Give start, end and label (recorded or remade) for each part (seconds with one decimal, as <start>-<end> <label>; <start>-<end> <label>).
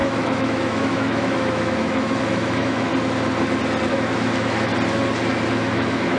0.0-2.9 remade; 2.9-3.9 recorded; 3.9-4.7 remade; 4.7-5.5 recorded; 5.5-6.2 remade